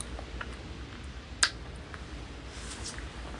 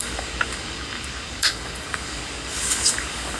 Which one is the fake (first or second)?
second